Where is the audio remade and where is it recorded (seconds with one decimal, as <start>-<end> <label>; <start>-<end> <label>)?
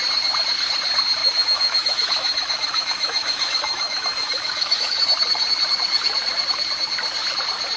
0.0-1.2 recorded; 1.2-5.0 remade; 5.0-7.8 recorded